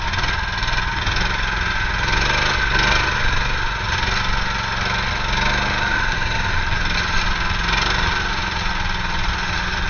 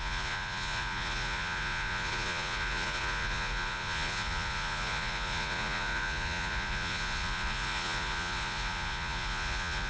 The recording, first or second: first